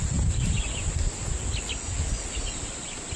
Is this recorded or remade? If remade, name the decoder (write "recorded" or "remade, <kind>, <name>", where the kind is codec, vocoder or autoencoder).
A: recorded